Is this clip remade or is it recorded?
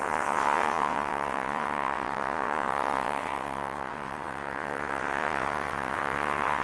remade